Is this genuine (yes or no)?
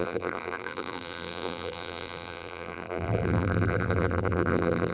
no